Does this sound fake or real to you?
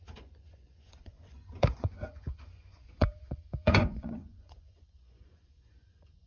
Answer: fake